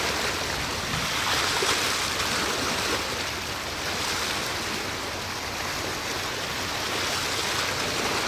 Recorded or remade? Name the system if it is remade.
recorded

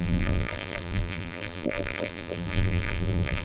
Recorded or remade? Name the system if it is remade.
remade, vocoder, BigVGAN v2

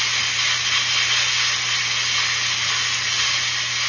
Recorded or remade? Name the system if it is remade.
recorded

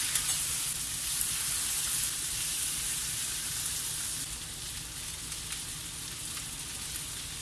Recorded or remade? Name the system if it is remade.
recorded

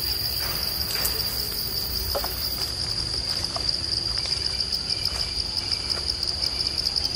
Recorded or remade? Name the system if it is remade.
recorded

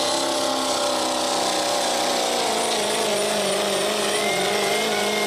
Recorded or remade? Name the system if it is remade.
recorded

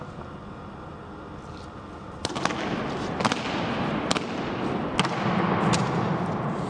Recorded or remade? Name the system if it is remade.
recorded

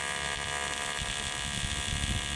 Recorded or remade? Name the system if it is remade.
remade, vocoder, BigVGAN v2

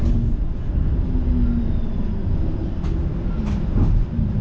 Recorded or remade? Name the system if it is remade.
recorded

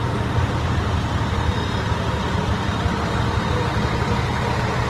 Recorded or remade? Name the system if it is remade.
recorded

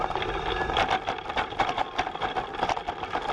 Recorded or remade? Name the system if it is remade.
recorded